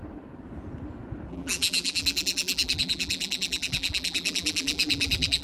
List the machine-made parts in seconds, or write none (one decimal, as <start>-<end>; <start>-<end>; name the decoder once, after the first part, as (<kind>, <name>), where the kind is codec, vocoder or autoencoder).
1.3-5.4 (vocoder, BigVGAN v2)

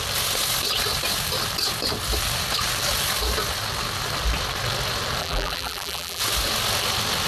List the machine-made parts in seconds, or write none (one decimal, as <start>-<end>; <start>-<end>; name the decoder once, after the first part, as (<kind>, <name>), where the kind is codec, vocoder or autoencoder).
5.2-6.2 (vocoder, BigVGAN v2)

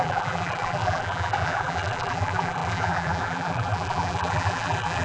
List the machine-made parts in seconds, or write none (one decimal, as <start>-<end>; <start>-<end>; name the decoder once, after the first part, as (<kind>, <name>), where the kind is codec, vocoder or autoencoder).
0.0-5.0 (vocoder, BigVGAN v2)

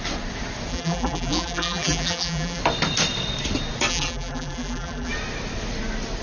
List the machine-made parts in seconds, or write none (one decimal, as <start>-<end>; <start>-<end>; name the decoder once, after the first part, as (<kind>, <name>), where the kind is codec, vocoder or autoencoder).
0.7-2.6 (vocoder, BigVGAN v2); 3.9-5.1

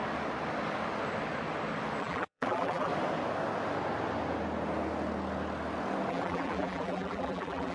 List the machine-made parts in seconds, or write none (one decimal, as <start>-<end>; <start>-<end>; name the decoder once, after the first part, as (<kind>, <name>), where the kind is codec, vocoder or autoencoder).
2.0-2.9 (vocoder, BigVGAN v2); 6.1-7.7

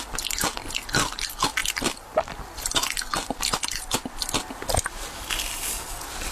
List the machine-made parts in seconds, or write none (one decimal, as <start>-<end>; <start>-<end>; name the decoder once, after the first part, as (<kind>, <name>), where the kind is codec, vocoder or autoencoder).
1.6-2.3 (vocoder, BigVGAN v2)

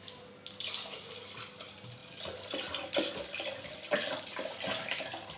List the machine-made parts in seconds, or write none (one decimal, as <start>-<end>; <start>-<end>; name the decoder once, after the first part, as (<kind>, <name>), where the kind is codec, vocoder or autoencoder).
none

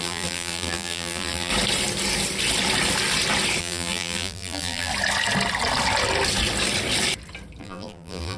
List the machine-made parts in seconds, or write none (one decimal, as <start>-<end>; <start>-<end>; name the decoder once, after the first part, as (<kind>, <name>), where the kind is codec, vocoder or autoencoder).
0.0-1.5 (vocoder, BigVGAN v2); 3.6-4.9; 7.6-8.4